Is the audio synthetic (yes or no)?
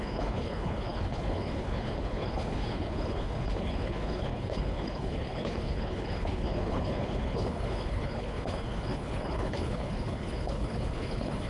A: yes